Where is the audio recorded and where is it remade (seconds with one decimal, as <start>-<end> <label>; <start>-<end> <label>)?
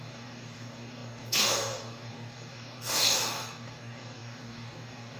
0.0-5.2 remade